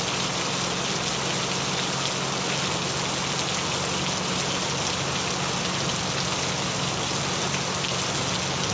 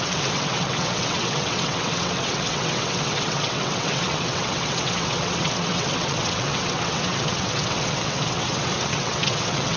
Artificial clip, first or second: second